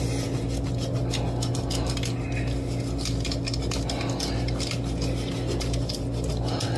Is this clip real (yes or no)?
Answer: yes